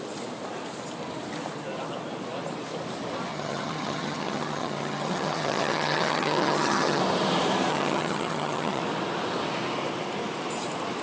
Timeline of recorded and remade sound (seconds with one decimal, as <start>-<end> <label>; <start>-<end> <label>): 0.0-3.3 recorded; 3.3-7.0 remade; 7.0-7.7 recorded; 7.7-8.8 remade; 8.8-11.0 recorded